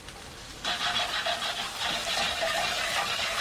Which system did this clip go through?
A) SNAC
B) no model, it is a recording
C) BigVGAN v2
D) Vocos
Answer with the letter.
B